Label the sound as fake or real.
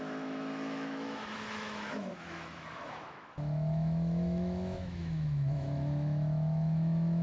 fake